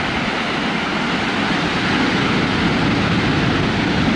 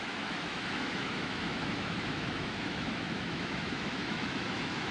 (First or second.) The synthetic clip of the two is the second